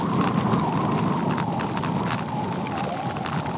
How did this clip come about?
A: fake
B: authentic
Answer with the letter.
B